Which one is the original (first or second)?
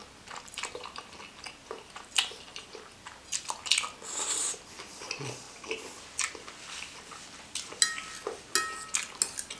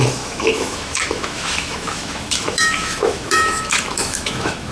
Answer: first